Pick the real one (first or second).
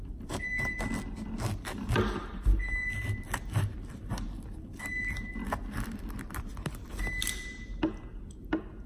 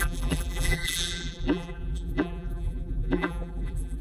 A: first